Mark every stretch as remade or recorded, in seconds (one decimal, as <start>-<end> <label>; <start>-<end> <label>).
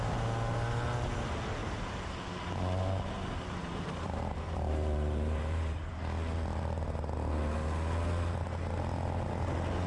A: 0.0-1.6 recorded; 1.6-2.1 remade; 2.1-3.6 recorded; 3.6-5.9 remade; 5.9-9.9 recorded